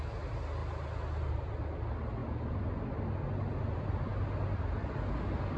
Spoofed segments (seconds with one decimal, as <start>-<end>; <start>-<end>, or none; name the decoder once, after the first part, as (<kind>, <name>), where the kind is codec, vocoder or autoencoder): none